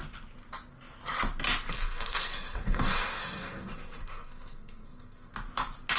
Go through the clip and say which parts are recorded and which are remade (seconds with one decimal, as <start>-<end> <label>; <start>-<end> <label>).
0.0-1.7 recorded; 1.7-5.3 remade; 5.3-6.0 recorded